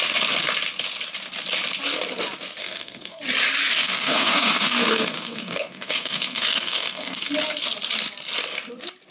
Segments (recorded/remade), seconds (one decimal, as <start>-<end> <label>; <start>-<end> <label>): 0.0-2.6 recorded; 2.6-3.2 remade; 3.2-3.8 recorded; 3.8-7.3 remade; 7.3-9.1 recorded